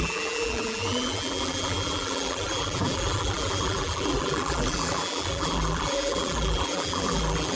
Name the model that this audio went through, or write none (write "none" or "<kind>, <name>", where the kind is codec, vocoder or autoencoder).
vocoder, BigVGAN v2